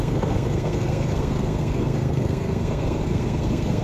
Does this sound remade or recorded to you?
remade